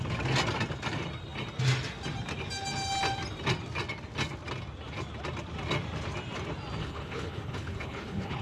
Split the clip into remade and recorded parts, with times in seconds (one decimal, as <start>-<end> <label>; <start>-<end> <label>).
0.0-6.8 recorded; 6.8-8.4 remade